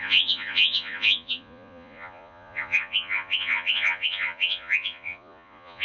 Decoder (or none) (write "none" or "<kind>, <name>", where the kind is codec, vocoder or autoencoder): vocoder, Vocos